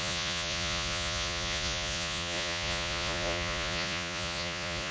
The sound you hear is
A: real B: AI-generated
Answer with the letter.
B